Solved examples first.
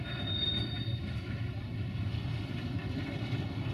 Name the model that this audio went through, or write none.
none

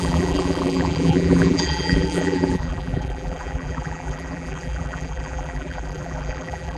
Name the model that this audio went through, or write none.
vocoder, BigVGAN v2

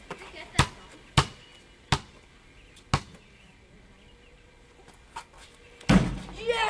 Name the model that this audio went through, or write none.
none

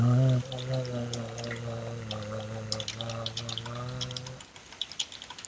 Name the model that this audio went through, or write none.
none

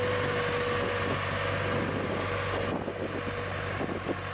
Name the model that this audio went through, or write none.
none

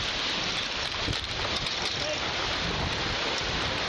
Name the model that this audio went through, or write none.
none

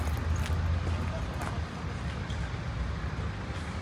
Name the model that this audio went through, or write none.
none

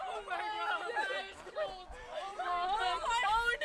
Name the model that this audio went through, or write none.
none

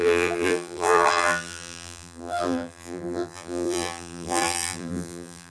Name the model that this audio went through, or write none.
vocoder, BigVGAN v2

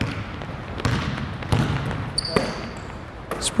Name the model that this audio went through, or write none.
none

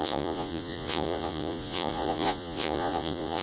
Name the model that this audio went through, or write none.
vocoder, Vocos